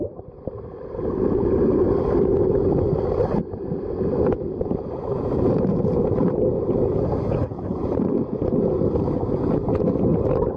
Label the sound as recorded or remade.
recorded